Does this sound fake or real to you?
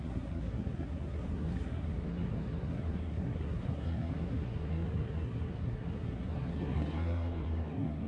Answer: fake